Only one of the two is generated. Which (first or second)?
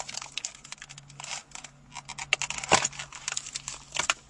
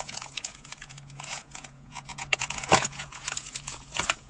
second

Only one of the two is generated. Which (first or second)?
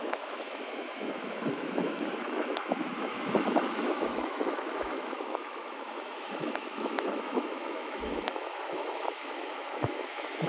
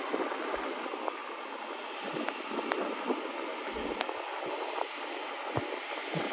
first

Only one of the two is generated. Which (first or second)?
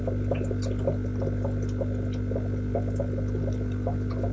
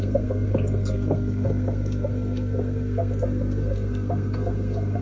second